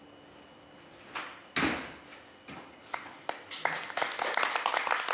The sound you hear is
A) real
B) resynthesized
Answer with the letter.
A